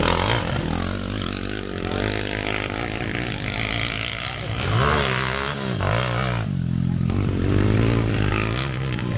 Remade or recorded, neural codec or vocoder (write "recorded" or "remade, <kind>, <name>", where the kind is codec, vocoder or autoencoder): recorded